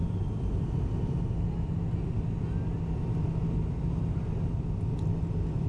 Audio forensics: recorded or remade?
recorded